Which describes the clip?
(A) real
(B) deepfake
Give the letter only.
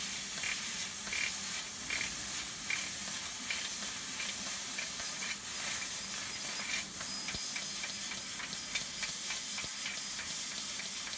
A